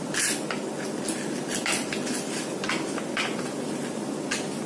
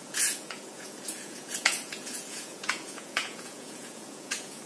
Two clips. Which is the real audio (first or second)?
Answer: first